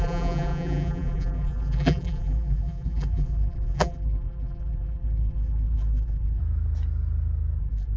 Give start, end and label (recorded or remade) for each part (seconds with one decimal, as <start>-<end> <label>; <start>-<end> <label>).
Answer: 0.0-6.4 remade; 6.4-7.6 recorded; 7.6-8.0 remade